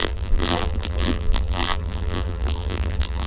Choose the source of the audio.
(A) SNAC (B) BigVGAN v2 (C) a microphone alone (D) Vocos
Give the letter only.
B